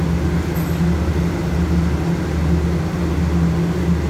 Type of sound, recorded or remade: recorded